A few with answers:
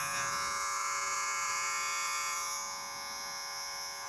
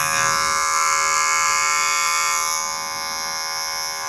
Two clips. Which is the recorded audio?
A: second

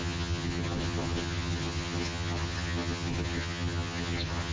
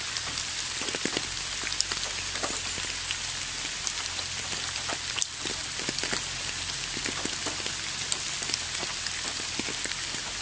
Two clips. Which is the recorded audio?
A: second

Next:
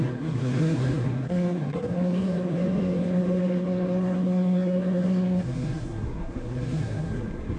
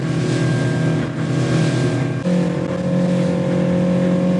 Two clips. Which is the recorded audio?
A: second